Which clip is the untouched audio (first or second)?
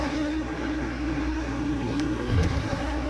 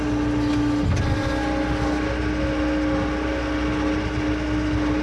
second